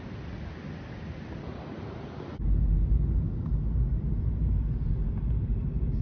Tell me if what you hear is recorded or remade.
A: recorded